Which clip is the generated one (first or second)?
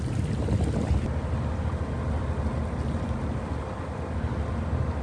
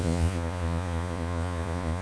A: second